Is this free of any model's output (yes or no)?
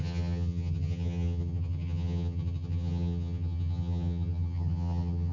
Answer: no